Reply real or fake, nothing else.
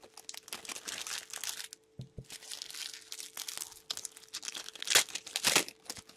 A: real